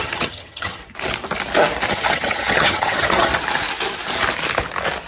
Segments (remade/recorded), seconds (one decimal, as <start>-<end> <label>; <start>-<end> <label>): 0.0-0.8 remade; 0.8-1.9 recorded; 1.9-3.3 remade; 3.3-5.1 recorded

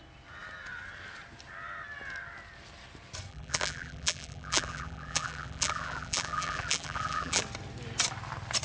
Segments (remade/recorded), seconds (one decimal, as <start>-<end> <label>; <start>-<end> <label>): 0.0-3.3 recorded; 3.3-7.4 remade; 7.4-8.6 recorded